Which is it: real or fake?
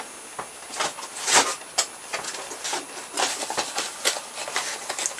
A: real